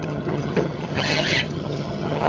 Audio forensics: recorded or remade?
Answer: remade